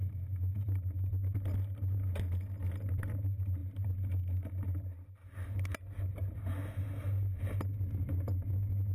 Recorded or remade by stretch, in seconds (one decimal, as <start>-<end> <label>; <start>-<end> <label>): 0.0-8.9 recorded

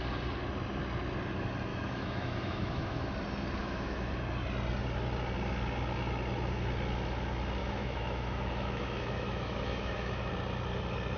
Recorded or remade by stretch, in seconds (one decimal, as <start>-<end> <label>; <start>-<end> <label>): 0.0-1.7 recorded; 1.7-3.1 remade; 3.1-3.6 recorded; 3.6-4.1 remade; 4.1-7.6 recorded; 7.6-10.3 remade; 10.3-11.2 recorded

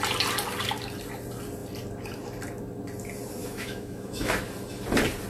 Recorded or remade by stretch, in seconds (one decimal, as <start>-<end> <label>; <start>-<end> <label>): 0.0-3.4 recorded; 3.4-4.5 remade; 4.5-5.3 recorded

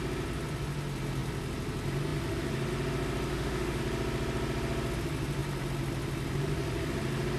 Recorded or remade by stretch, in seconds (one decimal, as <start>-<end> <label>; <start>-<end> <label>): 0.0-3.3 recorded; 3.3-3.8 remade; 3.8-7.4 recorded

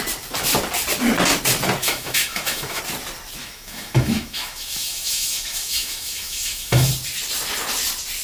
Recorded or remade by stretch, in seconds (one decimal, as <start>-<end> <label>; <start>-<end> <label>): 0.0-1.8 recorded; 1.8-2.8 remade; 2.8-3.4 recorded; 3.4-6.9 remade; 6.9-8.2 recorded